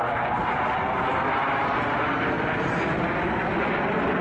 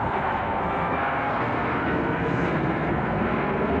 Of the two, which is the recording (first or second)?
first